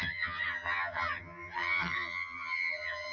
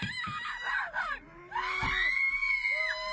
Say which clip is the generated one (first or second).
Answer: first